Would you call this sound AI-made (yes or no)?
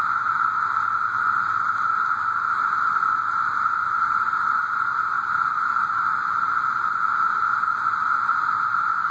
no